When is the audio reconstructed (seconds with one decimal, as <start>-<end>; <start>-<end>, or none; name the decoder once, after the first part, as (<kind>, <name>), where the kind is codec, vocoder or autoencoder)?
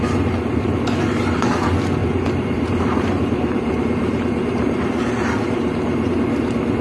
2.0-6.1 (vocoder, BigVGAN v2)